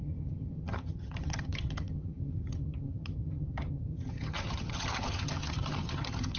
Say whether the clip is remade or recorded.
remade